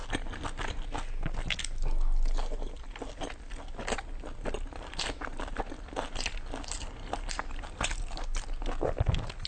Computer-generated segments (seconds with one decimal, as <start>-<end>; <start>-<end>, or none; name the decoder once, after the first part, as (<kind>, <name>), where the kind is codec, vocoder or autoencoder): none